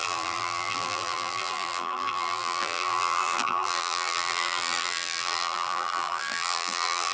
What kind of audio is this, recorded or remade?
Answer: remade